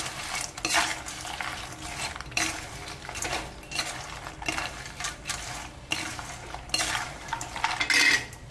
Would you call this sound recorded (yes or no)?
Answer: yes